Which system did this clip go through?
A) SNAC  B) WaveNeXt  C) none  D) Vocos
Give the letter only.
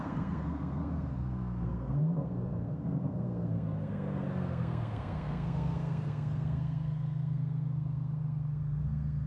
A